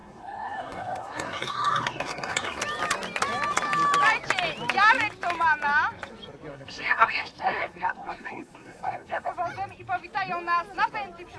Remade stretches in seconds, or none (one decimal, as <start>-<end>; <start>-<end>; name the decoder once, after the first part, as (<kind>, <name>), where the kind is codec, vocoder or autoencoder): 0.0-2.6 (codec, SNAC); 6.5-9.3